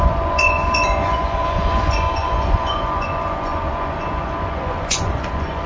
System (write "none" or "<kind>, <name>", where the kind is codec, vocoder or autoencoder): vocoder, Vocos